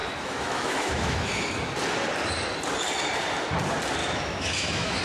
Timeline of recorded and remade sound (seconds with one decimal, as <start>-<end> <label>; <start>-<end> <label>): 0.0-1.5 remade; 1.5-4.0 recorded; 4.0-5.0 remade